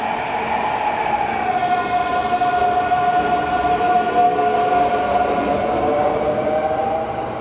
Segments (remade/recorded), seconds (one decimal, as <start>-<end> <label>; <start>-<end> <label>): 0.0-7.4 recorded